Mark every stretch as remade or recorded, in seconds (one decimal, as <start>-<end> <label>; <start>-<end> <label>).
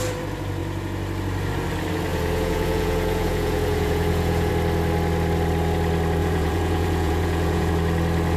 0.0-2.1 recorded; 2.1-4.5 remade; 4.5-6.2 recorded; 6.2-7.7 remade; 7.7-8.4 recorded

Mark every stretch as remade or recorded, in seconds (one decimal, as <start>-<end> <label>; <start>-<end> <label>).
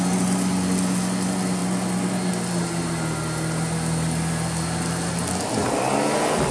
0.0-6.5 recorded